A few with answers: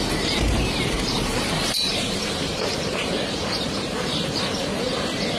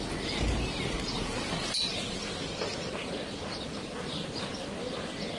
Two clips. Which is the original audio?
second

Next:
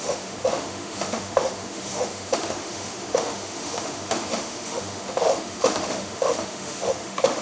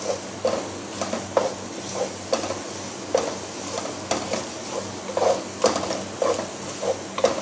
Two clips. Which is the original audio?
second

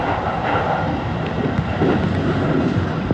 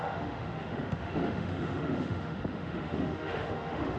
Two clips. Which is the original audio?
first